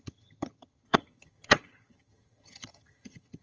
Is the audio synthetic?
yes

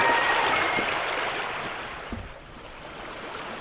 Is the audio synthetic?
no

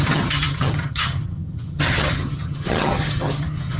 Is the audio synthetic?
yes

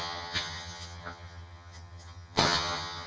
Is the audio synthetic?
yes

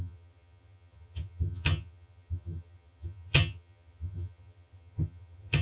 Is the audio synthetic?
yes